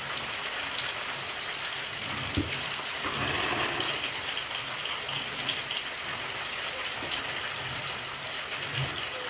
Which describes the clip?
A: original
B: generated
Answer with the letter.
A